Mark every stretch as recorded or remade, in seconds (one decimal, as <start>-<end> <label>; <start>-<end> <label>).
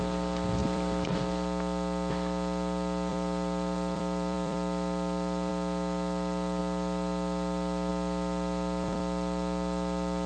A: 0.0-0.6 recorded; 0.6-1.1 remade; 1.1-3.1 recorded; 3.1-5.5 remade; 5.5-10.3 recorded